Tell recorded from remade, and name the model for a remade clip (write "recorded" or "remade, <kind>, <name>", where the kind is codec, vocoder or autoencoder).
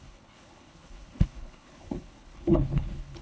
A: remade, codec, HILCodec